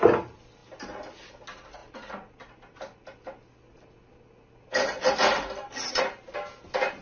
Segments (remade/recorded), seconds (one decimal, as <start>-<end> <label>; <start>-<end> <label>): 0.0-7.0 recorded